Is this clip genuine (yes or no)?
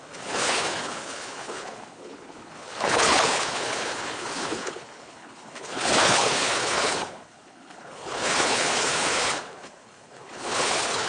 no